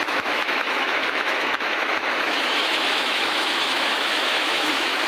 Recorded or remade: remade